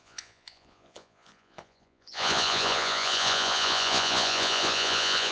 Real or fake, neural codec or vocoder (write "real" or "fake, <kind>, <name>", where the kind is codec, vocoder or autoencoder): fake, vocoder, Vocos